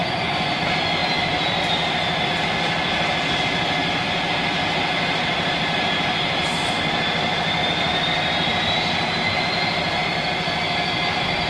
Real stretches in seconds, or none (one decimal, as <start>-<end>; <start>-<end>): 0.6-11.5

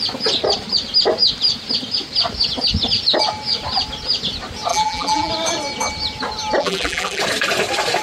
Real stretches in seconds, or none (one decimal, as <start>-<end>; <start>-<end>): 0.0-4.7; 5.3-6.6; 7.2-8.0